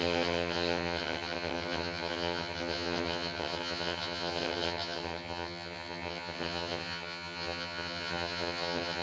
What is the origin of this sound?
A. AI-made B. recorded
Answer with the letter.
A